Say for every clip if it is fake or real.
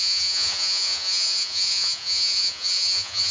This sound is fake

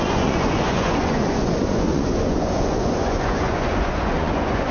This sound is fake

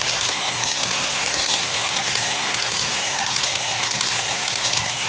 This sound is fake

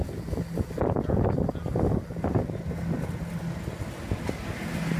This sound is real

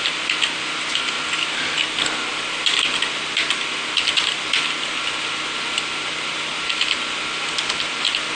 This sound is real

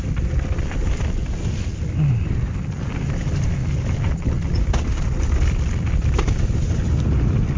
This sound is real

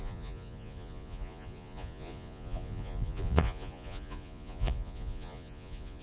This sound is fake